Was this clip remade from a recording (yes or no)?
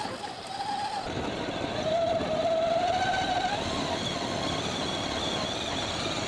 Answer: no